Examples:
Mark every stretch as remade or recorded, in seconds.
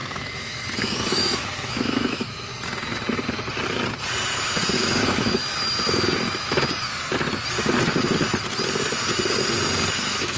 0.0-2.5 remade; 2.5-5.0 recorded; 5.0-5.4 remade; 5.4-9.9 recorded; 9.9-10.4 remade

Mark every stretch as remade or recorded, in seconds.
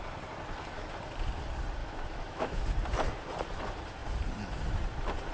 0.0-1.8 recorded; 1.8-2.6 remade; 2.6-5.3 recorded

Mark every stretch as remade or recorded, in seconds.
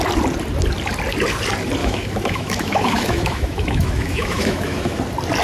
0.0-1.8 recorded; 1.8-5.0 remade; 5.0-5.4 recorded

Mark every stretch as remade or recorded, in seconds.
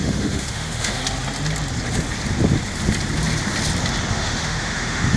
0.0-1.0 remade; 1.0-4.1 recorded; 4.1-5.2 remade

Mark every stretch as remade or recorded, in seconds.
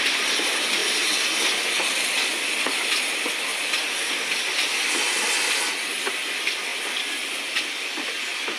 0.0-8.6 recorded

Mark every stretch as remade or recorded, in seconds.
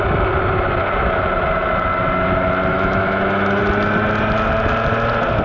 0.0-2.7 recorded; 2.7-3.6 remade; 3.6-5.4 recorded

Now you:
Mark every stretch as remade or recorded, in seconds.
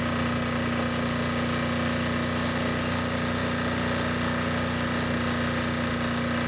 0.0-6.5 recorded